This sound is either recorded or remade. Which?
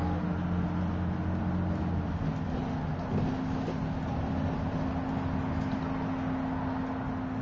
recorded